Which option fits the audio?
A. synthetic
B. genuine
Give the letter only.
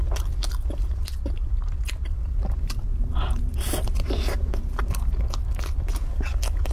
B